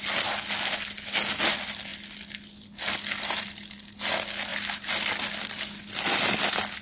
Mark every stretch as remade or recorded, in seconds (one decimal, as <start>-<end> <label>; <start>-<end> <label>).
0.0-6.8 recorded